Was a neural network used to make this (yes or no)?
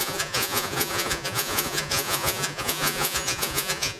yes